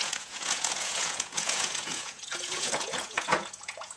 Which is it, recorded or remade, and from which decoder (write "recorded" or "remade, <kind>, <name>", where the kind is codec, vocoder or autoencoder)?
remade, vocoder, Vocos